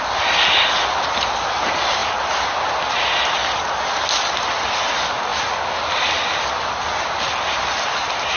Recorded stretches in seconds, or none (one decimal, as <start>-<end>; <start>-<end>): 0.0-8.4